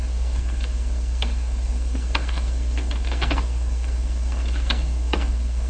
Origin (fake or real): fake